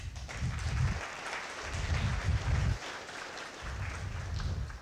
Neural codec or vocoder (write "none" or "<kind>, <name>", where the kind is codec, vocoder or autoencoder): none